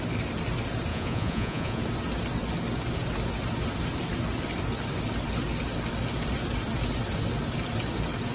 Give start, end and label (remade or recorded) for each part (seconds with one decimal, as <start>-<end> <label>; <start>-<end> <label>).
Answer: 0.0-0.9 recorded; 0.9-1.8 remade; 1.8-8.3 recorded